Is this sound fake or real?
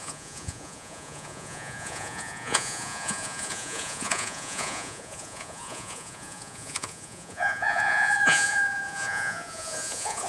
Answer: fake